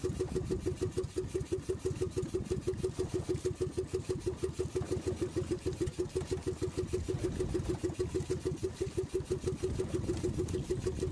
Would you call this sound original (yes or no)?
yes